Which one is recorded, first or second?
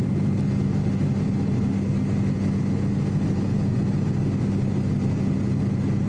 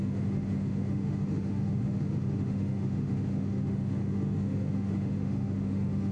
first